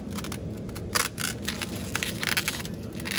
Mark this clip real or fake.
real